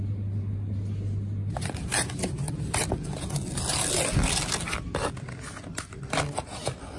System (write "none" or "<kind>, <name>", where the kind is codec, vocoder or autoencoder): none